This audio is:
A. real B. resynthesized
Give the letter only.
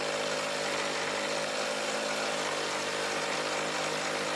A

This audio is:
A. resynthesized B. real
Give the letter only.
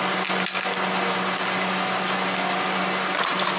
B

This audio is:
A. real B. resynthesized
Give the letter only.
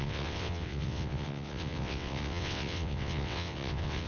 B